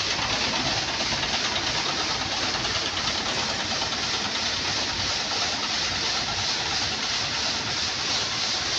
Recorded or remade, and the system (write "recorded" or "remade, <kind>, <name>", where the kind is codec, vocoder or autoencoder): recorded